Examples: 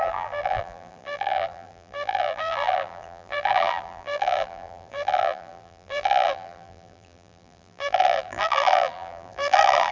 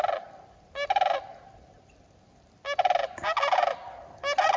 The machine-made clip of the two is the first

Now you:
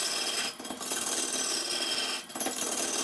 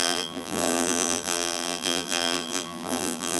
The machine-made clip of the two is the second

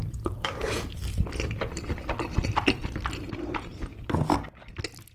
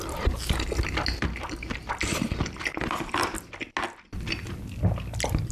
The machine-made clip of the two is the first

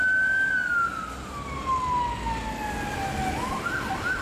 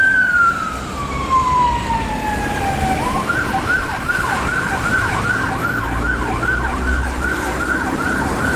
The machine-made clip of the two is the second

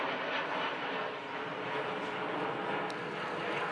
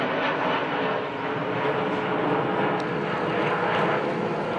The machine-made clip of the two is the first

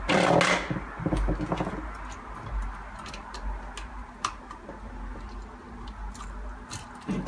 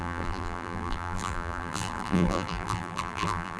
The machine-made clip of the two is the second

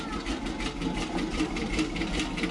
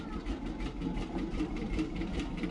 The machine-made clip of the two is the second